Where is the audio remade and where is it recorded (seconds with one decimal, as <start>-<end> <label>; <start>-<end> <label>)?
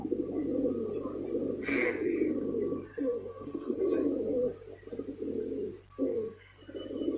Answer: 0.0-1.6 recorded; 1.6-2.1 remade; 2.1-2.9 recorded; 2.9-3.8 remade; 3.8-6.1 recorded; 6.1-6.6 remade; 6.6-7.2 recorded